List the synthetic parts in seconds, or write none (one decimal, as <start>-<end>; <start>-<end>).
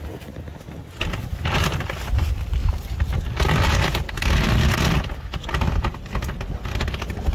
2.6-3.4